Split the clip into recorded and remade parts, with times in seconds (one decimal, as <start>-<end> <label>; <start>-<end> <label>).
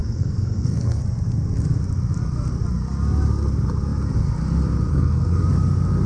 0.0-1.0 remade; 1.0-4.9 recorded; 4.9-5.5 remade; 5.5-6.1 recorded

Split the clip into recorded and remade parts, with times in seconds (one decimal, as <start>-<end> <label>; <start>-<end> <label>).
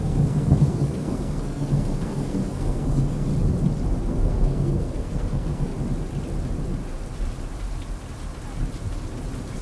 0.0-3.3 remade; 3.3-3.9 recorded; 3.9-5.7 remade; 5.7-9.6 recorded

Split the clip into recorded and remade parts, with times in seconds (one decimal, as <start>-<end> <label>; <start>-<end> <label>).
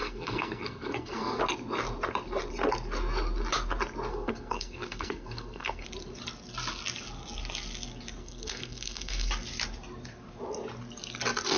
0.0-1.4 remade; 1.4-4.1 recorded; 4.1-5.8 remade; 5.8-8.2 recorded; 8.2-9.3 remade; 9.3-11.6 recorded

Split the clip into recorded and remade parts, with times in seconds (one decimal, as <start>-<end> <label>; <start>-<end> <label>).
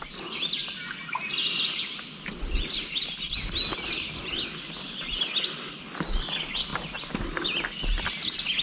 0.0-8.6 recorded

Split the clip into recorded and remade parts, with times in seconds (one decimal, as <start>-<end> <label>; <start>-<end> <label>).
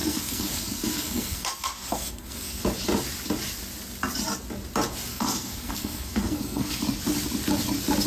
0.0-2.6 remade; 2.6-5.1 recorded; 5.1-6.8 remade; 6.8-8.1 recorded